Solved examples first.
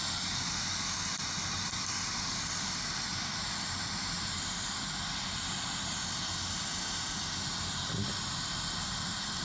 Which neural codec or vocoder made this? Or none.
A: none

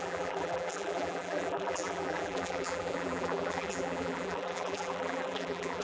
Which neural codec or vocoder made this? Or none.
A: vocoder, BigVGAN v2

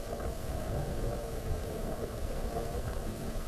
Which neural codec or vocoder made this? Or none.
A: codec, SNAC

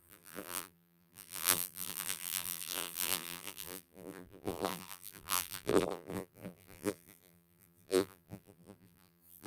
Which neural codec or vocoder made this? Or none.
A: vocoder, BigVGAN v2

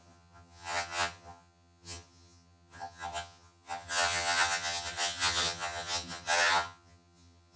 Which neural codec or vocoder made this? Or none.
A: vocoder, HiFi-GAN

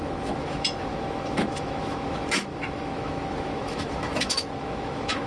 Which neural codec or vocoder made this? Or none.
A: autoencoder, DAC-VAE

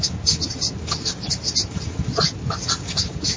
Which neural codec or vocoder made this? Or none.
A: none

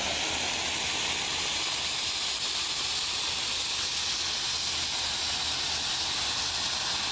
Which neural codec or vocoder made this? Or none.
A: none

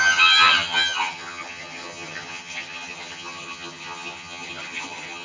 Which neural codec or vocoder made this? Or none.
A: vocoder, HiFi-GAN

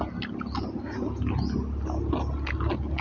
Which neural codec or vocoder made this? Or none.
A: none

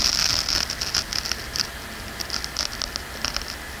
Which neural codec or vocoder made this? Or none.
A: none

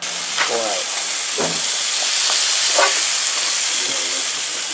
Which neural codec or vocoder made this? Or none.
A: none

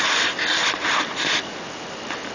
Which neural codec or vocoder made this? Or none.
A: none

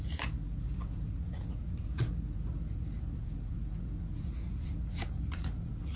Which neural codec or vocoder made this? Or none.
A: vocoder, Vocos